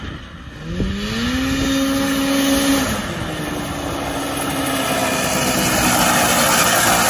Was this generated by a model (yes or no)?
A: no